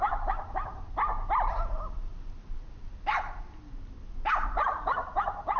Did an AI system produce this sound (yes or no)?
no